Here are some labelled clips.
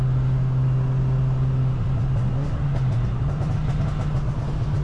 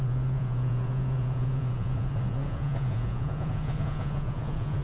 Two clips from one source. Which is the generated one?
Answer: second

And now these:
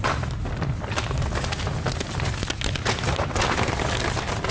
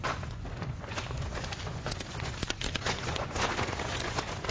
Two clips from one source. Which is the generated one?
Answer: second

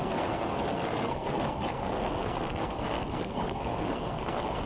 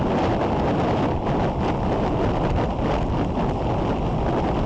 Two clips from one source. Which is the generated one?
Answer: first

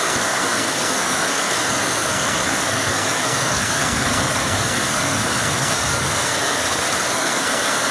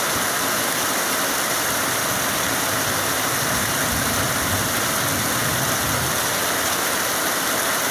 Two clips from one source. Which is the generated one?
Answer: first